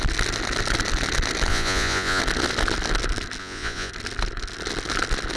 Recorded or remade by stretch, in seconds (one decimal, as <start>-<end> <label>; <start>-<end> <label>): 0.0-1.5 recorded; 1.5-2.2 remade; 2.2-3.4 recorded; 3.4-3.9 remade; 3.9-5.4 recorded